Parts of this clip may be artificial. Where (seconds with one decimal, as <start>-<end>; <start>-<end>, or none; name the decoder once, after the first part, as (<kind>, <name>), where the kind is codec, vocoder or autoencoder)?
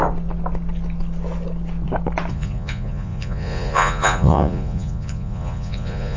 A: 2.3-6.2 (vocoder, Vocos)